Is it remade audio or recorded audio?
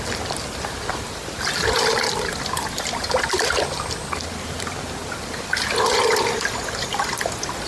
recorded